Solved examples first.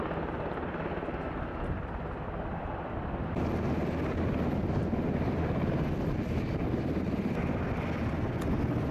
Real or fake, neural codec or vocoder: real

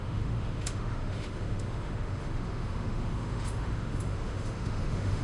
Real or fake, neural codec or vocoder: fake, autoencoder, DAC-VAE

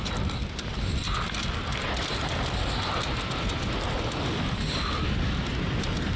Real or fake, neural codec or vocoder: real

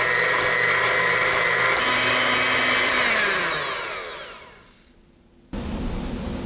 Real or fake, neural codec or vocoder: real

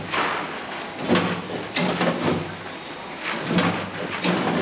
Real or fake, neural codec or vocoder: real